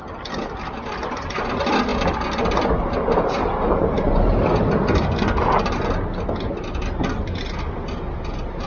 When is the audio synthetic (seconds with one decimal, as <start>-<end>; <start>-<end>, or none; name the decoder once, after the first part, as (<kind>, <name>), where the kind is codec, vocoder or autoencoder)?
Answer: none